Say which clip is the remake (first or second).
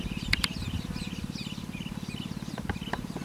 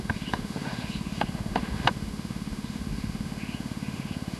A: second